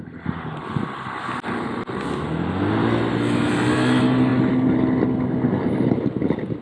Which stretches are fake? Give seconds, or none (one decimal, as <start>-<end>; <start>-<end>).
none